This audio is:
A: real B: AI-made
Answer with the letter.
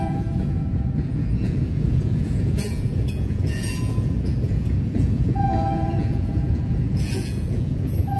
B